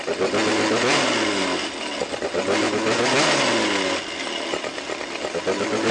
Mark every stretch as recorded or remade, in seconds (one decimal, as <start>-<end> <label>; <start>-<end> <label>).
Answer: 0.0-5.9 recorded